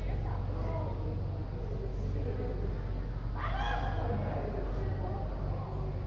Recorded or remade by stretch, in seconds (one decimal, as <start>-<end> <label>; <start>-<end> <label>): 0.0-6.1 recorded